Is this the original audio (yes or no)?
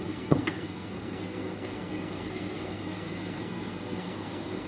no